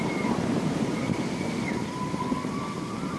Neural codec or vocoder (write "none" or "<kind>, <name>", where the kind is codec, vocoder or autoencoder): vocoder, BigVGAN v2